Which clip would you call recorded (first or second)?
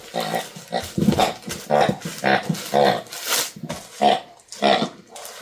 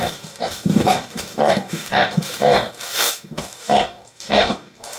first